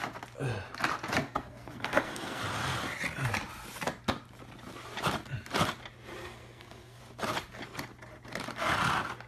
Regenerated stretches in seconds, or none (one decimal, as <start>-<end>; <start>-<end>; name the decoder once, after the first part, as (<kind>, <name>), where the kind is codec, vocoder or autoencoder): 1.2-2.4 (codec, SNAC); 6.2-7.0